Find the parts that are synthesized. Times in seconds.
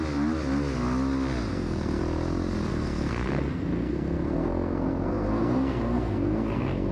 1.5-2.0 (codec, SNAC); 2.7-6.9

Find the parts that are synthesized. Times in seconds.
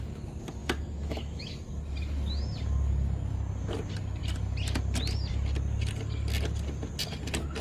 0.6-1.5 (autoencoder, DAC-VAE)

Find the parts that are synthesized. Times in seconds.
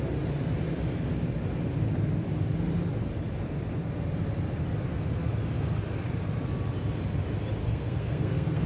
7.6-8.7 (codec, SNAC)